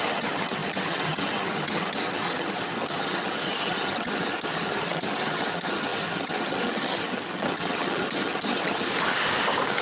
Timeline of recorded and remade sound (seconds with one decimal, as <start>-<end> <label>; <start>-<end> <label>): 0.0-8.9 remade; 8.9-9.8 recorded